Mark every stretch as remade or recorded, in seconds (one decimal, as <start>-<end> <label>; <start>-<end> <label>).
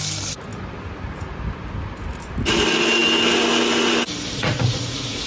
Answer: 0.0-4.4 recorded; 4.4-5.3 remade